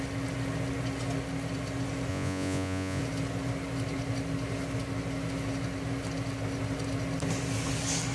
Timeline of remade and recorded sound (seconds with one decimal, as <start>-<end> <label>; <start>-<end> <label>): 0.0-2.1 recorded; 2.1-3.0 remade; 3.0-8.1 recorded